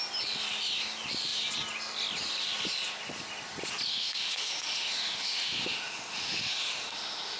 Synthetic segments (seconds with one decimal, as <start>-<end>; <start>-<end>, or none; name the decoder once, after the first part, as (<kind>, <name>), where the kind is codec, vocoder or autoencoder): 3.9-7.4 (autoencoder, DAC-VAE)